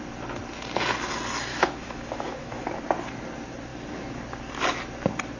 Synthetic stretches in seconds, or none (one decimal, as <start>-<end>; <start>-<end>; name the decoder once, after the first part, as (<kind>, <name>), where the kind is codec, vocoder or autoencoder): 1.5-2.7 (autoencoder, DAC-VAE)